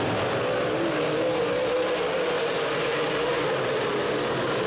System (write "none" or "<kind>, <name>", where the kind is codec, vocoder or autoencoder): none